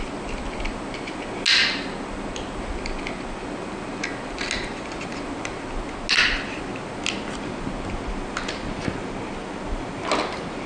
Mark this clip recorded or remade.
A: recorded